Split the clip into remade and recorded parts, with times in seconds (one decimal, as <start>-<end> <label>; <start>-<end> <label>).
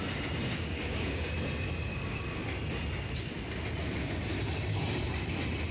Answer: 0.0-0.5 recorded; 0.5-1.3 remade; 1.3-1.9 recorded; 1.9-2.4 remade; 2.4-5.7 recorded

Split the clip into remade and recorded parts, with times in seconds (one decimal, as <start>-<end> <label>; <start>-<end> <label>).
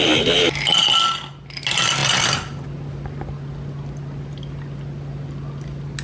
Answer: 0.0-6.0 recorded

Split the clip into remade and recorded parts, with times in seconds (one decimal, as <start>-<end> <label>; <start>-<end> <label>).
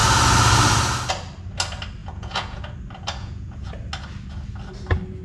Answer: 0.0-2.0 recorded; 2.0-2.6 remade; 2.6-3.2 recorded; 3.2-3.7 remade; 3.7-5.2 recorded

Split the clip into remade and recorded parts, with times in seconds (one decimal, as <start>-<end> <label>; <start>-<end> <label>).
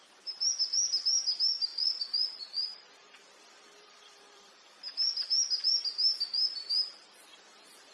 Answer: 0.0-0.5 remade; 0.5-1.7 recorded; 1.7-4.7 remade; 4.7-5.9 recorded; 5.9-7.2 remade; 7.2-7.9 recorded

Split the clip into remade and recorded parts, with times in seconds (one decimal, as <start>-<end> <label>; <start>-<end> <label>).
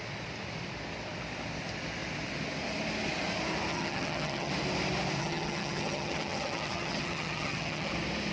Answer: 0.0-3.7 recorded; 3.7-4.5 remade; 4.5-5.2 recorded; 5.2-7.9 remade; 7.9-8.3 recorded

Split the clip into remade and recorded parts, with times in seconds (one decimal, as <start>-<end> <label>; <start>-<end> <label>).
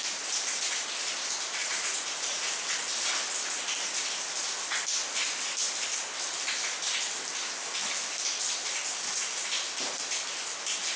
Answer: 0.0-1.6 recorded; 1.6-2.6 remade; 2.6-11.0 recorded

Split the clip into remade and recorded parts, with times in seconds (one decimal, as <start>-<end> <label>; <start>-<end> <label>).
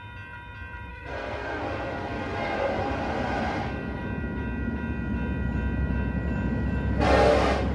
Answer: 0.0-0.9 recorded; 0.9-1.6 remade; 1.6-7.7 recorded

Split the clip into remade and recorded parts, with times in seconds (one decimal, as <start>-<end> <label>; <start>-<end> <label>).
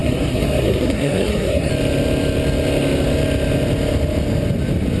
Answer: 0.0-1.7 remade; 1.7-5.0 recorded